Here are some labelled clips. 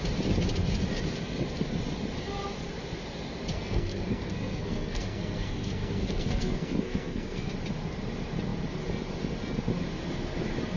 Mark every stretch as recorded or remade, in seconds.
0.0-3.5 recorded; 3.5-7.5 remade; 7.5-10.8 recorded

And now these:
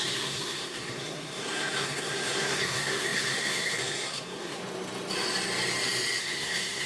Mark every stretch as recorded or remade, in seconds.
0.0-4.6 remade; 4.6-6.2 recorded; 6.2-6.9 remade

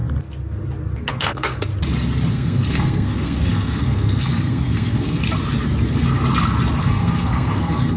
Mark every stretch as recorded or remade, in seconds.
0.0-1.1 recorded; 1.1-1.7 remade; 1.7-2.3 recorded; 2.3-5.2 remade; 5.2-6.8 recorded; 6.8-8.0 remade

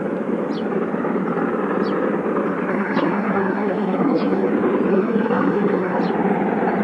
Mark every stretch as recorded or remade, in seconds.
0.0-2.7 recorded; 2.7-4.5 remade; 4.5-4.9 recorded; 4.9-6.0 remade; 6.0-6.8 recorded